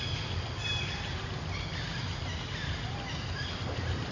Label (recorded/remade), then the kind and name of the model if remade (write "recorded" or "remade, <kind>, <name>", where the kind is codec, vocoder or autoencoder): recorded